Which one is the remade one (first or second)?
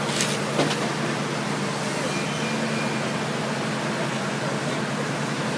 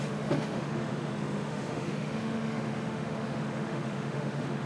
second